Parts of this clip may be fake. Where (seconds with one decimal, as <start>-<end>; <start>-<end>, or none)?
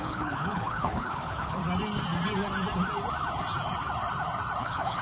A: 0.0-1.6; 4.6-5.0